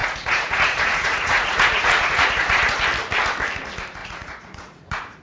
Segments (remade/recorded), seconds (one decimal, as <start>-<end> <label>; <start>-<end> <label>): 0.0-2.8 remade; 2.8-4.0 recorded; 4.0-5.2 remade